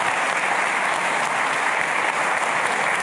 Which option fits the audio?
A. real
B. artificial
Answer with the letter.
A